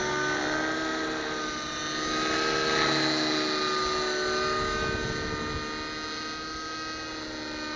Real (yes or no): yes